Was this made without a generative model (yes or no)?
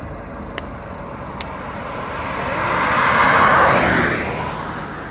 yes